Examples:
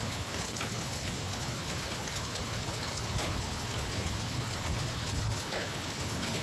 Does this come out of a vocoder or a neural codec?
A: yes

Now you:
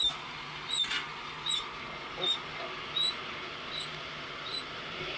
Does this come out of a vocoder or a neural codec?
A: no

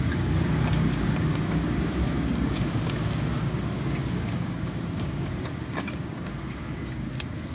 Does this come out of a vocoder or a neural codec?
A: yes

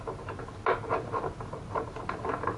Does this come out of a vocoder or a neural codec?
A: no